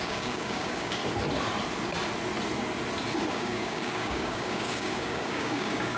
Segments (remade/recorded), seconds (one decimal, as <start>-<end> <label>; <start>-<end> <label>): 0.0-1.0 remade; 1.0-3.3 recorded; 3.3-6.0 remade